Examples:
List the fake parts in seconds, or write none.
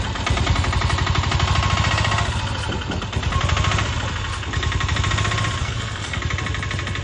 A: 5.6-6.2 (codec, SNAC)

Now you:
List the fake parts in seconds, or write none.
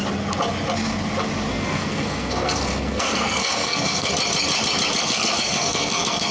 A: 1.5-4.1 (codec, SNAC); 5.0-6.3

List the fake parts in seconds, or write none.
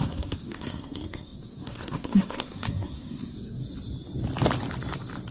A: 0.0-3.6 (codec, SNAC)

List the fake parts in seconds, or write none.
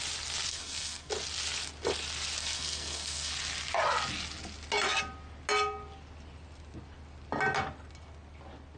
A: 0.5-1.1 (codec, SNAC); 2.4-3.3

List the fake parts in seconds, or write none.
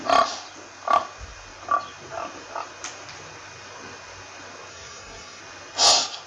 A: 4.7-5.4 (codec, SNAC)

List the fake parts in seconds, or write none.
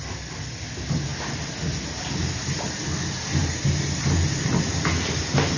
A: none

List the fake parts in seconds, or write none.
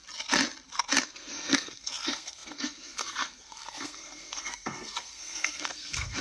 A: 1.0-6.2 (codec, SNAC)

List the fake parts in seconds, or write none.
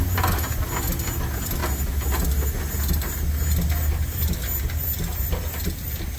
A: none